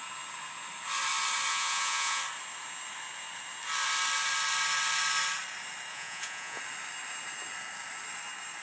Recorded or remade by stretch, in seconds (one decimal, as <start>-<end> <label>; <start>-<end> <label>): 0.0-1.5 recorded; 1.5-2.2 remade; 2.2-5.9 recorded; 5.9-6.6 remade; 6.6-8.6 recorded